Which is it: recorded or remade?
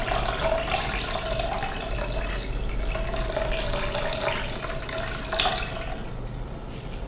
recorded